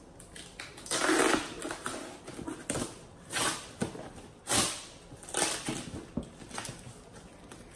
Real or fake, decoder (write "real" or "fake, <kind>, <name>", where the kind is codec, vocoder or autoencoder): real